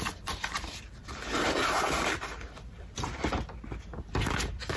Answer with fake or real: real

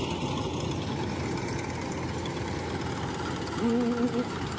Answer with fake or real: real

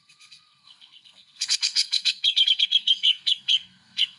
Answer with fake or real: fake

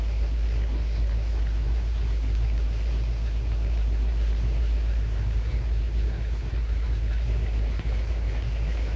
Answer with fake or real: fake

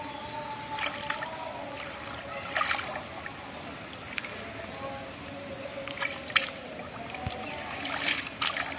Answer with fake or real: real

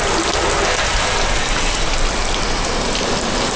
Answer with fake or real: real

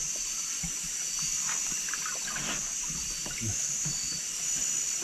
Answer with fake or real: real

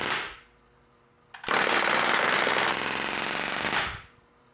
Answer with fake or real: real